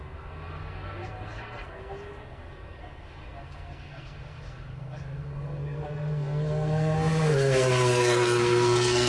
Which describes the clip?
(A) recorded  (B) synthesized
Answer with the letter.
B